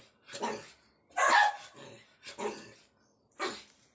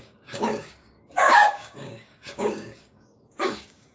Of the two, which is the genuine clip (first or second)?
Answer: first